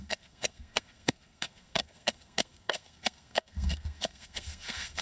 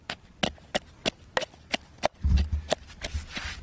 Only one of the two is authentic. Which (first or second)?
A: second